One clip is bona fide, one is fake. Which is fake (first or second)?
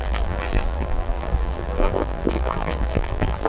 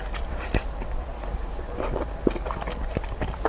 first